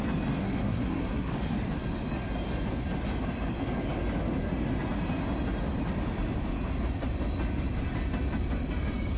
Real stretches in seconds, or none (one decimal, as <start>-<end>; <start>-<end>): 0.0-0.4; 1.3-9.2